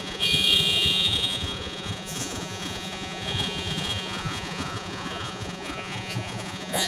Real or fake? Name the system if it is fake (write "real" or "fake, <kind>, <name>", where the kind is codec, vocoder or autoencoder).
fake, vocoder, Vocos